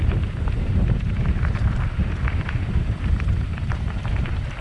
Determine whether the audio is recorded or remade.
remade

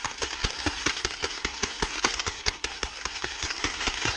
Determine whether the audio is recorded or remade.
remade